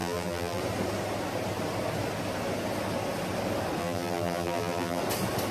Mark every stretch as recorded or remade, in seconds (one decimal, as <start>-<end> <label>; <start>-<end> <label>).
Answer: 0.0-0.6 remade; 0.6-3.8 recorded; 3.8-5.0 remade; 5.0-5.5 recorded